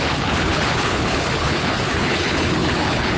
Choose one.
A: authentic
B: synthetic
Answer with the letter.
B